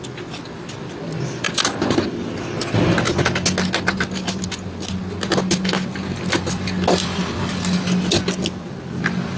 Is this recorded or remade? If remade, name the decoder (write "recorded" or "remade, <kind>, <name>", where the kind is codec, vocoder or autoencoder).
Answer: recorded